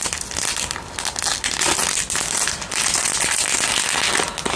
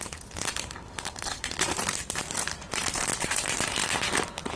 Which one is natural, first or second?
first